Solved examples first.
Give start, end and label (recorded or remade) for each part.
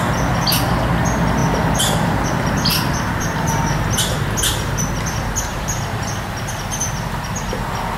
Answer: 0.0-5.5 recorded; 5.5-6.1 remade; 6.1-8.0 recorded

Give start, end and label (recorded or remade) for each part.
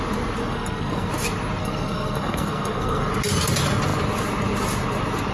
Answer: 0.0-0.4 recorded; 0.4-1.1 remade; 1.1-1.6 recorded; 1.6-3.1 remade; 3.1-5.3 recorded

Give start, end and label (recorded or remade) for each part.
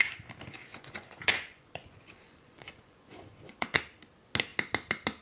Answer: 0.0-0.7 recorded; 0.7-3.8 remade; 3.8-5.2 recorded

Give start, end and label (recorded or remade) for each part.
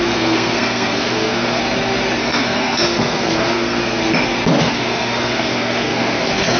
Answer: 0.0-1.6 remade; 1.6-2.2 recorded; 2.2-4.0 remade; 4.0-4.6 recorded; 4.6-6.6 remade